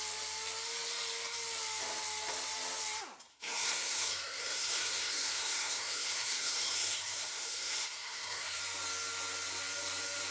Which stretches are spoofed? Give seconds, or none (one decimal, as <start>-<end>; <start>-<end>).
3.3-8.6